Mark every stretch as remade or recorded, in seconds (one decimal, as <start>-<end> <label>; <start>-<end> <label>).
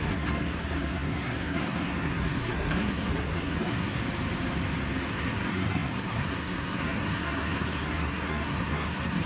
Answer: 0.0-4.0 remade; 4.0-5.1 recorded; 5.1-9.3 remade